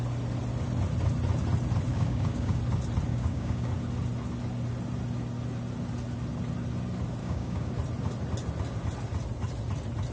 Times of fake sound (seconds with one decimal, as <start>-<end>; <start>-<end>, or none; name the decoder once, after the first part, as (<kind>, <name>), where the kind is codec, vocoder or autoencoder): 1.9-2.6 (codec, DAC); 3.1-3.7; 7.2-7.7